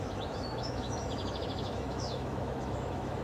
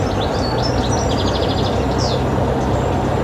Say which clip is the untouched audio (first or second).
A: second